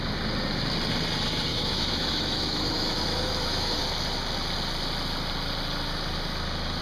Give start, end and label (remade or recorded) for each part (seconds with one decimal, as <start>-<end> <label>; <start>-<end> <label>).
0.0-1.5 recorded; 1.5-3.8 remade; 3.8-6.8 recorded